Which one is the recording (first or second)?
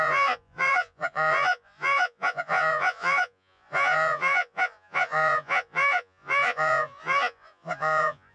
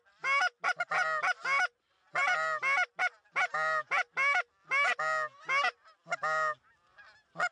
second